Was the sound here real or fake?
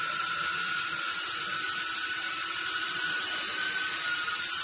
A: fake